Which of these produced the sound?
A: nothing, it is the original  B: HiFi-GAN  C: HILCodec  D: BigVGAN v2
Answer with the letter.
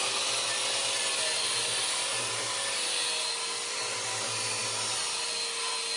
A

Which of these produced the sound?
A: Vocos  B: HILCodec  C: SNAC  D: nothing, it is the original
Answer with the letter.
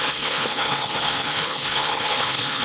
B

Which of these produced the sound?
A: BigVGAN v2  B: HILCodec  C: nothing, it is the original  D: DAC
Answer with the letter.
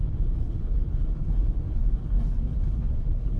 B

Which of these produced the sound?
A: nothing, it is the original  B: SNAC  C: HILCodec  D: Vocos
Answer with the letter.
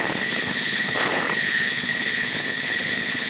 C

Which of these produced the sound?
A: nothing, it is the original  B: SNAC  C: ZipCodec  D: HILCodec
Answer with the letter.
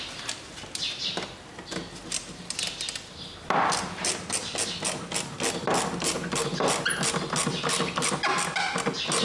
A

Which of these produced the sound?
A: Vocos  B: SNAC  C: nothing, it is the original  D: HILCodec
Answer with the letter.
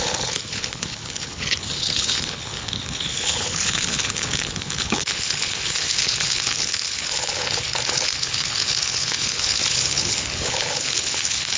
D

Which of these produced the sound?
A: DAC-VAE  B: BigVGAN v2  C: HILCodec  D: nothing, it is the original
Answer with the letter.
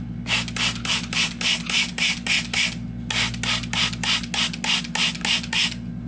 D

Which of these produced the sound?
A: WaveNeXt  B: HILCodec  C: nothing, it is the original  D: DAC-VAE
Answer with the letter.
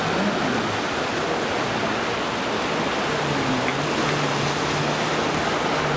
C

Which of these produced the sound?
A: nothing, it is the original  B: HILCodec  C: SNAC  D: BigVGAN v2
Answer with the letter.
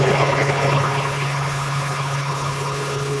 B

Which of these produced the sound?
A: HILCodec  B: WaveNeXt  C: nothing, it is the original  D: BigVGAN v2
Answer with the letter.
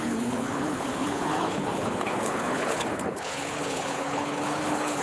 A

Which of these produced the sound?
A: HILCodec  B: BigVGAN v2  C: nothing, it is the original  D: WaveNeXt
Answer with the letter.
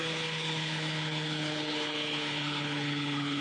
A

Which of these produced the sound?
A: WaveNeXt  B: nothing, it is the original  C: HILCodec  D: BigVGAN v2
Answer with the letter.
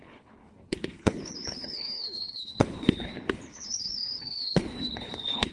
C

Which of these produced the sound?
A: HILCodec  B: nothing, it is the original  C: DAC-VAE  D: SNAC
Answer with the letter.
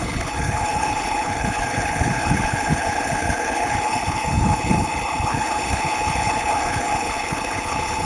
A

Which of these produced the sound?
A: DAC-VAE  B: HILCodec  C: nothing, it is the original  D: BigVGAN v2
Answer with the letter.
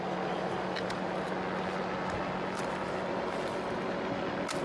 C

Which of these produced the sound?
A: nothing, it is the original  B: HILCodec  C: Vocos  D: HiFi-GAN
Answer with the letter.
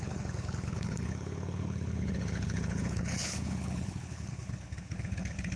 B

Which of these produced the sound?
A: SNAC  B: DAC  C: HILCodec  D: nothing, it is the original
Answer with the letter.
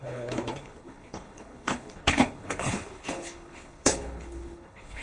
C